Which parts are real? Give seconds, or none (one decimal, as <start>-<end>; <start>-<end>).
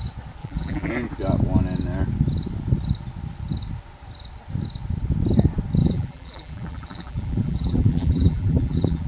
0.0-0.4; 0.9-5.8